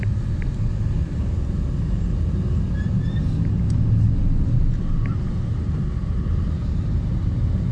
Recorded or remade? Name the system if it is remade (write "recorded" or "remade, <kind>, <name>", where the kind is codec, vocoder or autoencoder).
recorded